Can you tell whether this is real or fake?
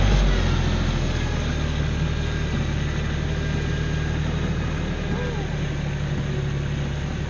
real